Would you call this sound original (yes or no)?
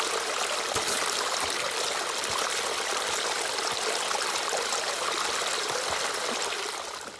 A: yes